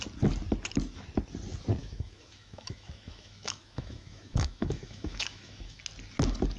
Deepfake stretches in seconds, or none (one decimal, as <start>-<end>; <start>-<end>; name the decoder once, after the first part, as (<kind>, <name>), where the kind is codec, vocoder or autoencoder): 1.8-5.8 (autoencoder, DAC-VAE)